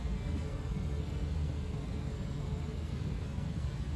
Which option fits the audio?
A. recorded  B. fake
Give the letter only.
B